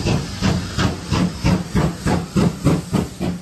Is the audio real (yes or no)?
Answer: yes